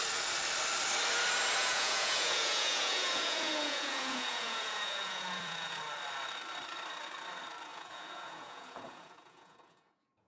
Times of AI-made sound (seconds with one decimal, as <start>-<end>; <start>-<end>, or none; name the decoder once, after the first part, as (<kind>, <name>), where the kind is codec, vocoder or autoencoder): 1.6-5.8 (vocoder, Vocos); 7.7-10.3